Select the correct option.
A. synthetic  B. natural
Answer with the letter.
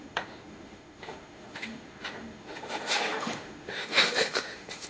A